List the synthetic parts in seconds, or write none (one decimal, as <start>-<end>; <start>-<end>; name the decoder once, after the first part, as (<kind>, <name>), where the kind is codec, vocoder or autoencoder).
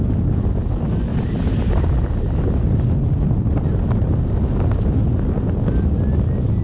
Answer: 1.1-1.9 (vocoder, BigVGAN v2)